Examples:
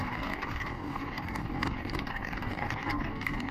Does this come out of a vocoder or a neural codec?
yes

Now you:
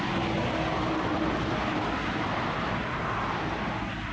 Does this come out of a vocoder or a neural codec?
no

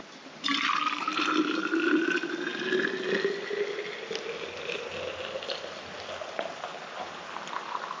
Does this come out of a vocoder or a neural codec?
no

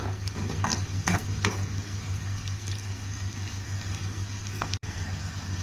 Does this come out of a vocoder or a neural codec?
yes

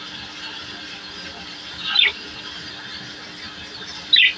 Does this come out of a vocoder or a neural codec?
no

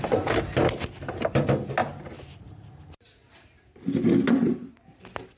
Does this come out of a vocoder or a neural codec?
no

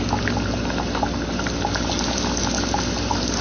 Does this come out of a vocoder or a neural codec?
no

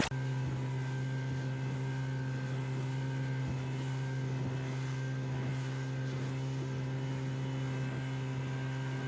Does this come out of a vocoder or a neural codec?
no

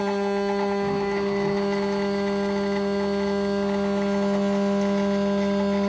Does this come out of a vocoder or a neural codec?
no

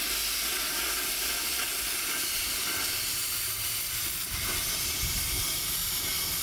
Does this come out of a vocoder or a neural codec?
no